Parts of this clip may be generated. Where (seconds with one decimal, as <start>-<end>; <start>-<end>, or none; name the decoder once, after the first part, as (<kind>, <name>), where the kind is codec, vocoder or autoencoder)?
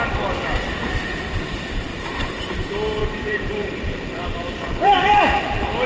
1.9-2.5 (vocoder, BigVGAN v2); 3.0-5.2